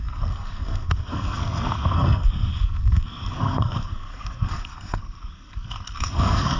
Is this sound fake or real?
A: fake